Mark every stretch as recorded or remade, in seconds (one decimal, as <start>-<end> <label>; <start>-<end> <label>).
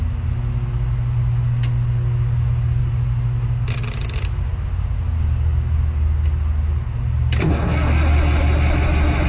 0.0-9.3 recorded